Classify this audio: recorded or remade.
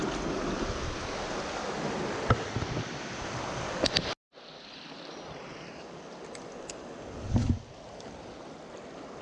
recorded